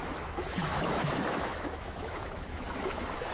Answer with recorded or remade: remade